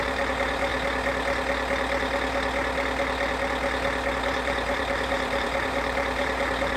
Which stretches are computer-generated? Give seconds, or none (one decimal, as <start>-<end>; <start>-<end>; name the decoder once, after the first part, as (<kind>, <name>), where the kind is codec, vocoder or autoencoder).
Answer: 0.0-0.7 (vocoder, BigVGAN v2); 4.2-6.8